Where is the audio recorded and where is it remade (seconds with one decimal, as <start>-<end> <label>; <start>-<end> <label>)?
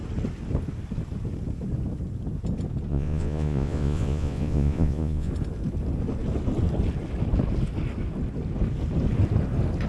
0.0-2.9 recorded; 2.9-5.3 remade; 5.3-9.9 recorded